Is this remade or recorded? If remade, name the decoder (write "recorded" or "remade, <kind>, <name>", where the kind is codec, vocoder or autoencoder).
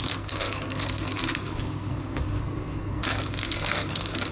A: remade, codec, SNAC